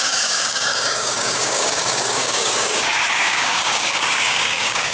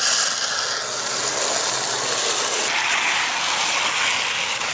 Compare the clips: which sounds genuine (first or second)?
second